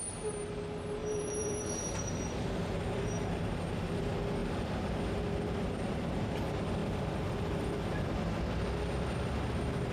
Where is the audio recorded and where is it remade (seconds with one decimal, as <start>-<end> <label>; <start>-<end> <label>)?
0.0-1.0 recorded; 1.0-4.0 remade; 4.0-4.4 recorded; 4.4-6.3 remade; 6.3-9.9 recorded